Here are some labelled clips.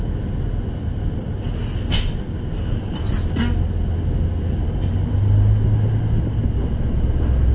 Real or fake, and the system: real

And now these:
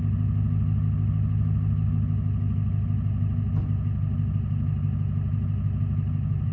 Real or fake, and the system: real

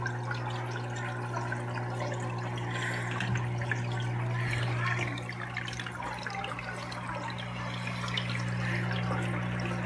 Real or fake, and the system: real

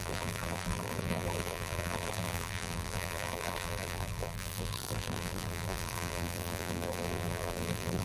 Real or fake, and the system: fake, vocoder, BigVGAN v2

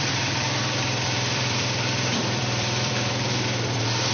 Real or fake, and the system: fake, vocoder, BigVGAN v2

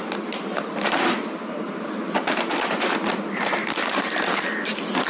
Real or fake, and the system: fake, vocoder, BigVGAN v2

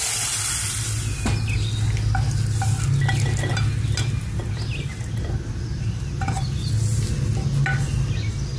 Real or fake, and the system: real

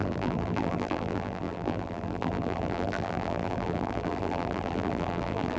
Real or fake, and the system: fake, vocoder, BigVGAN v2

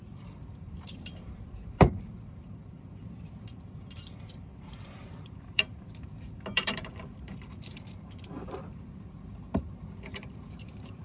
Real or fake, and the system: fake, vocoder, BigVGAN v2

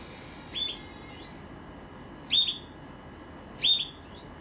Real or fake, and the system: real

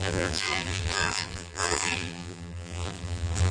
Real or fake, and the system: fake, vocoder, BigVGAN v2